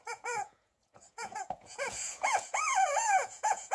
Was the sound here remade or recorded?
remade